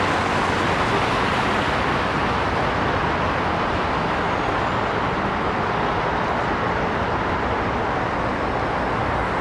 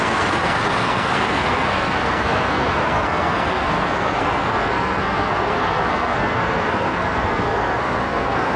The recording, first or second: first